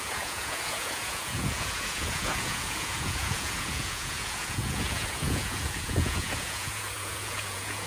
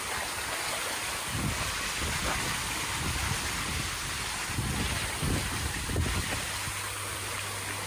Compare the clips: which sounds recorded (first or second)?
second